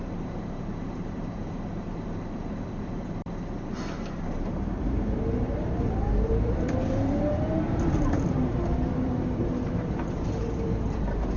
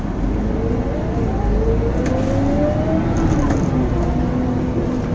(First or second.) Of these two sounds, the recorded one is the second